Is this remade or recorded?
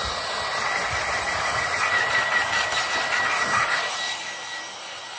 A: recorded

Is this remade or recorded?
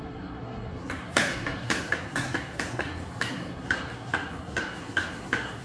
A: remade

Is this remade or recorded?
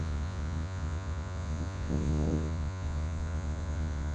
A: remade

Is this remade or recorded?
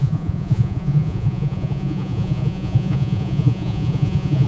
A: remade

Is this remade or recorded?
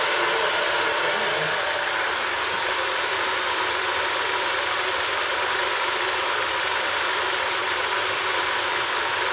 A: recorded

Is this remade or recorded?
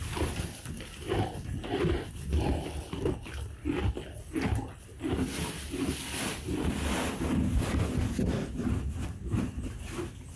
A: recorded